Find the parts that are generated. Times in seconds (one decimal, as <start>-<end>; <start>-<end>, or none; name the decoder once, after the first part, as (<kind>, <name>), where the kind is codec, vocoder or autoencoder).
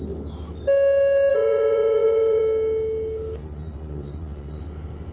1.3-2.4 (vocoder, Vocos); 3.4-4.6